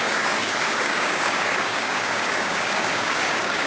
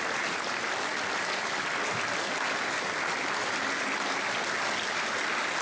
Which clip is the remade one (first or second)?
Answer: first